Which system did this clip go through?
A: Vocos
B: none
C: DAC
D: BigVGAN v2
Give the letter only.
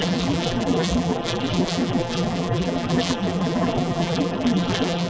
D